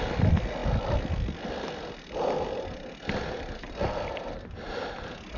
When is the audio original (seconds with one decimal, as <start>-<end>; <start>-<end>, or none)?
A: 0.0-5.4